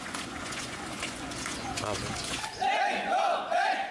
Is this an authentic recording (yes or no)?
no